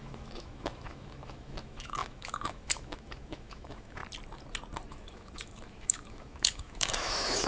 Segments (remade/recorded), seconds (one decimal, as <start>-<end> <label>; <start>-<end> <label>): 0.0-4.0 remade; 4.0-4.9 recorded; 4.9-7.5 remade